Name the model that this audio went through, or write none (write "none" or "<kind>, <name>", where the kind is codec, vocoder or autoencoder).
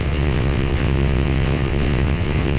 vocoder, WaveNeXt